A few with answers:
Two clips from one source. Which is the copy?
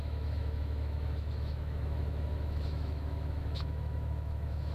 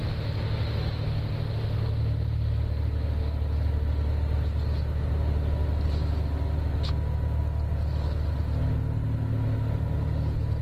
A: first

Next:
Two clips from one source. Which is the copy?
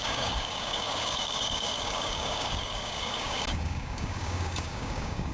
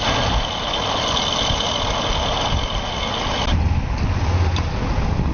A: first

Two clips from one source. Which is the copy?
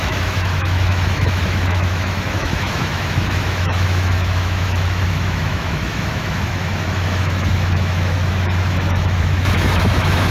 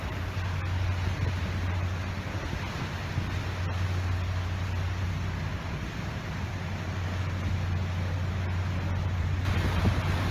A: first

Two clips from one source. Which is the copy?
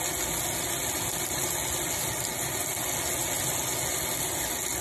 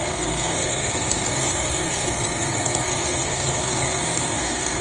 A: second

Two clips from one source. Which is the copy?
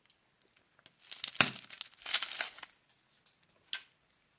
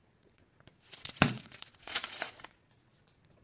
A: second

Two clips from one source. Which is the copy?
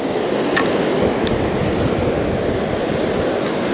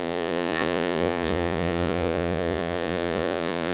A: second